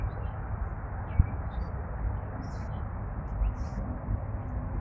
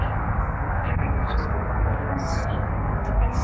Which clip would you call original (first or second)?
first